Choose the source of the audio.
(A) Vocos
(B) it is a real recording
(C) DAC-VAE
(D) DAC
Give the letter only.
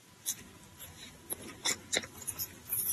B